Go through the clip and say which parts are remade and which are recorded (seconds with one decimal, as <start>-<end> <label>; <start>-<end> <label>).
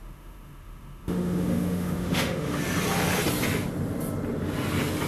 0.0-2.6 remade; 2.6-5.1 recorded